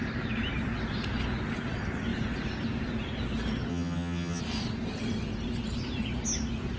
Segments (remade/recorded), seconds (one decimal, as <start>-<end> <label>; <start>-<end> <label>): 0.0-3.7 recorded; 3.7-4.4 remade; 4.4-6.8 recorded